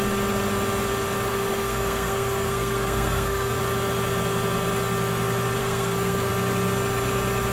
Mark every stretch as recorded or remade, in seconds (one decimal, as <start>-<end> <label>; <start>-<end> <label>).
0.0-1.3 recorded; 1.3-3.6 remade; 3.6-5.6 recorded; 5.6-6.3 remade; 6.3-7.5 recorded